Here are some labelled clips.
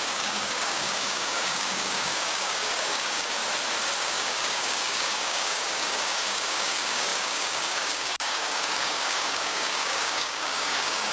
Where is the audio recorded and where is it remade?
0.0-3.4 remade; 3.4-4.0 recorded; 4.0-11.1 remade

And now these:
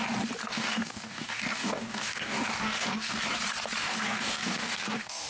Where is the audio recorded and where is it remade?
0.0-0.4 recorded; 0.4-3.2 remade; 3.2-3.8 recorded; 3.8-5.3 remade

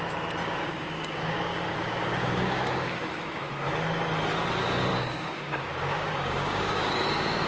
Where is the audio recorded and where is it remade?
0.0-0.4 recorded; 0.4-3.5 remade; 3.5-4.9 recorded; 4.9-6.9 remade; 6.9-7.5 recorded

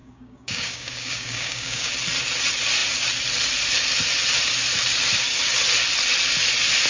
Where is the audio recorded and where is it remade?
0.0-1.9 remade; 1.9-6.9 recorded

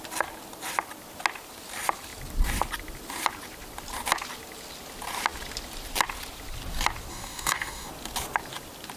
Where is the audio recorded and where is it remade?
0.0-7.1 recorded; 7.1-7.9 remade; 7.9-9.0 recorded

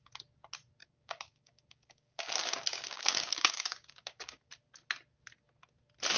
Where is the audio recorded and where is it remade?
0.0-0.8 recorded; 0.8-4.5 remade; 4.5-6.2 recorded